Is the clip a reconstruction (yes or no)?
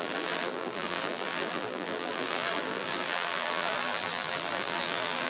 yes